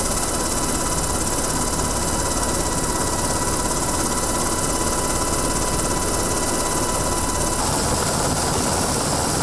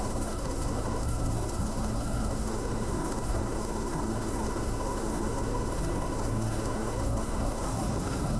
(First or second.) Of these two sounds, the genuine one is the first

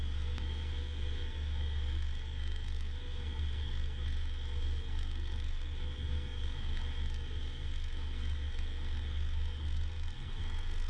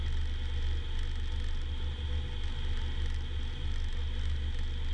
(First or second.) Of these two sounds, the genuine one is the second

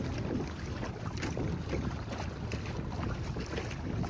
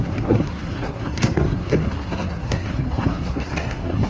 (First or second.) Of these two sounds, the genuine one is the first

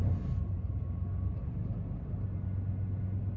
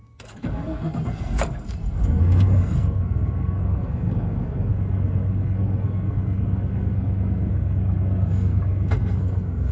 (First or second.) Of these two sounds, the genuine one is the first